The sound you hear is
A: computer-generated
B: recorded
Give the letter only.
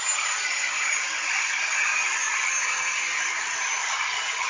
B